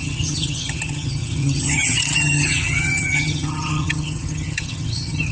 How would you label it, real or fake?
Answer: fake